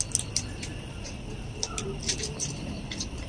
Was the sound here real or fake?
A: real